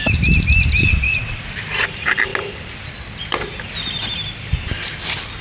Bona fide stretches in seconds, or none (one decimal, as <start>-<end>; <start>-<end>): 0.0-0.8; 1.4-5.4